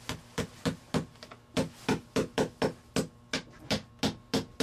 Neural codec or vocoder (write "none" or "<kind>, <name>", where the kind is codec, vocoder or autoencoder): none